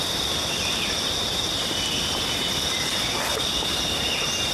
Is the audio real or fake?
real